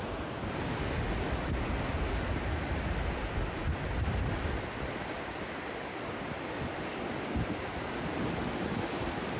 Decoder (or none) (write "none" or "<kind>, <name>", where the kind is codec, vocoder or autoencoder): none